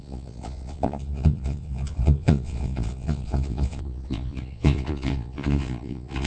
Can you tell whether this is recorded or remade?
remade